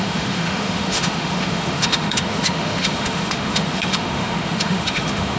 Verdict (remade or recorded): remade